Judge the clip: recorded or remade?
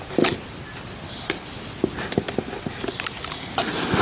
recorded